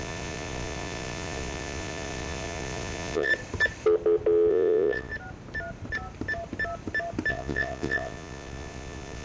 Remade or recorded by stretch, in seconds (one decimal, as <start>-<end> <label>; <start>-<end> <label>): 0.0-3.3 remade; 3.3-4.5 recorded; 4.5-5.1 remade; 5.1-7.3 recorded; 7.3-9.2 remade